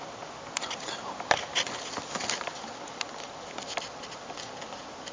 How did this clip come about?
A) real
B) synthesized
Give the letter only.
A